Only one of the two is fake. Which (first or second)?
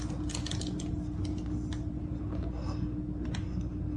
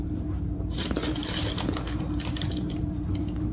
second